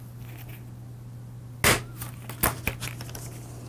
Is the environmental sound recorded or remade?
recorded